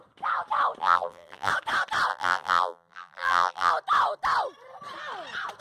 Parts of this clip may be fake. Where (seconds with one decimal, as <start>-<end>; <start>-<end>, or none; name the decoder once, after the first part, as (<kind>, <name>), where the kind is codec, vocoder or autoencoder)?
0.8-1.5 (vocoder, BigVGAN v2); 2.1-3.7